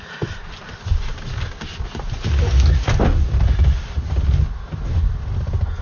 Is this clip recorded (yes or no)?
yes